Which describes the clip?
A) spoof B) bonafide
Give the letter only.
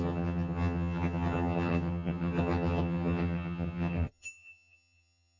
A